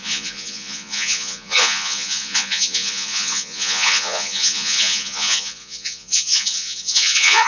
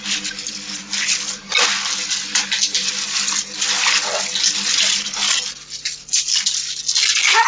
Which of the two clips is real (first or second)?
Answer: second